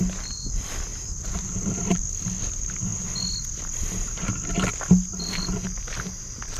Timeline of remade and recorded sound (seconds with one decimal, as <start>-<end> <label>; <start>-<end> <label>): 0.0-0.9 recorded; 0.9-2.0 remade; 2.0-6.6 recorded